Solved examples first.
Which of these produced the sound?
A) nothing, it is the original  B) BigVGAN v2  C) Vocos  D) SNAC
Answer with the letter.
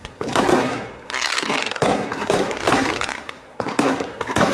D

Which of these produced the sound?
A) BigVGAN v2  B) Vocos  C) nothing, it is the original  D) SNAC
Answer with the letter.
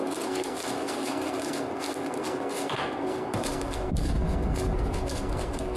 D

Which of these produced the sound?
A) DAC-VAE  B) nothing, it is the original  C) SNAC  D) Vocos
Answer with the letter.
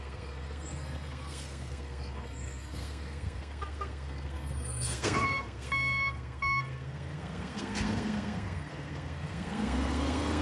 C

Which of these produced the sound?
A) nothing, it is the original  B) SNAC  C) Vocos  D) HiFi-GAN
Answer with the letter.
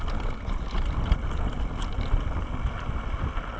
A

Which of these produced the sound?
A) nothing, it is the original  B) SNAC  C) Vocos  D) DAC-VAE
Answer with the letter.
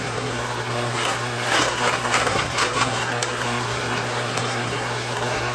B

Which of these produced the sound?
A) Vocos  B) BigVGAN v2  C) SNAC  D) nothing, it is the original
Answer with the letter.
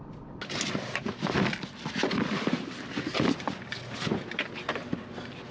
D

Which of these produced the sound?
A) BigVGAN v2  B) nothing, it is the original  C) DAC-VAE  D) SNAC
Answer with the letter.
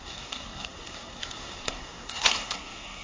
D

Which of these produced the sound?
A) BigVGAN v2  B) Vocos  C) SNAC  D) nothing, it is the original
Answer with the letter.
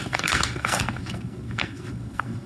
C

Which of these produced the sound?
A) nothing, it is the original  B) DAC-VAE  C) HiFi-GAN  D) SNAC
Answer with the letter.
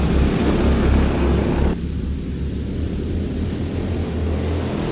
A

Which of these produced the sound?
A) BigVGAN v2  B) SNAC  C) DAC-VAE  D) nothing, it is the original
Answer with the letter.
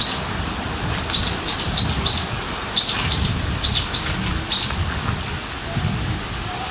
D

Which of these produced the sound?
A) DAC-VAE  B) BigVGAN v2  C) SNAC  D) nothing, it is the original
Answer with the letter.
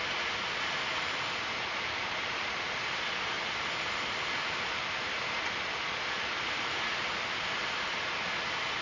D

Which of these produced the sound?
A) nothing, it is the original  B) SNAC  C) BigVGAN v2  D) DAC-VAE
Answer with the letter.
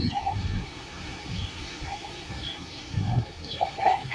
B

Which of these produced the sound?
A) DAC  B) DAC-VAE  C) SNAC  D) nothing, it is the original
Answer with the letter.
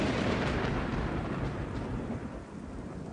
D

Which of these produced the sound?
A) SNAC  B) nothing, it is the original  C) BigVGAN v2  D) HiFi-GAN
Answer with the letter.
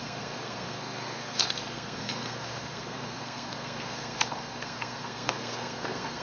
A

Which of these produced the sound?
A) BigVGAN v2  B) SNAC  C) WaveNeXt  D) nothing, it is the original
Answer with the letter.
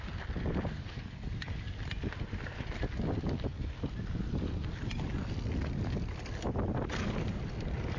D